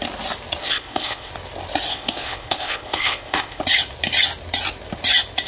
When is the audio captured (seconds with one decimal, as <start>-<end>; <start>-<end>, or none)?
0.0-0.6; 1.3-1.9; 3.6-5.5